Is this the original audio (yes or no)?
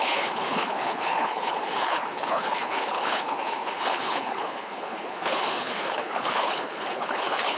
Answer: no